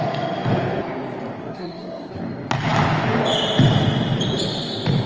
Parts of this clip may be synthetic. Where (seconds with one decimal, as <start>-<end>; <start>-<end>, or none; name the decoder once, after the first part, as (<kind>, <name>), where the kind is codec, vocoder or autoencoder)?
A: 1.4-2.1 (codec, SNAC)